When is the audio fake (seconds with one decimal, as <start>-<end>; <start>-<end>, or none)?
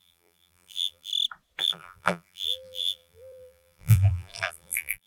0.0-1.1; 1.6-5.1